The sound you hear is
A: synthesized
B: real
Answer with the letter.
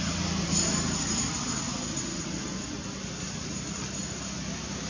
B